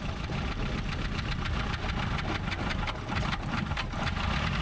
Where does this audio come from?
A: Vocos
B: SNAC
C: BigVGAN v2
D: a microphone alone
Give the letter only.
D